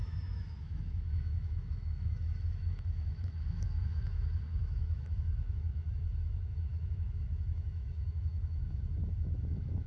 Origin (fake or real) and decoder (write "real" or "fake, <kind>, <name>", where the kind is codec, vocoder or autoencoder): fake, autoencoder, DAC-VAE